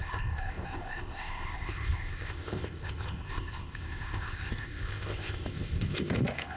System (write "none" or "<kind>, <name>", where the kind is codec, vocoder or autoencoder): codec, ZipCodec